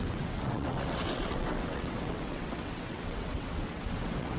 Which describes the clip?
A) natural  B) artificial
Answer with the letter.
B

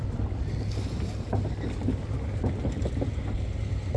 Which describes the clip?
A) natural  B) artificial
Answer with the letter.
A